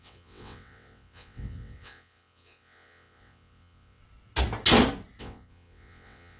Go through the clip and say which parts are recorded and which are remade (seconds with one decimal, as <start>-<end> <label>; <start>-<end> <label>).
0.0-4.0 remade; 4.0-5.2 recorded; 5.2-6.4 remade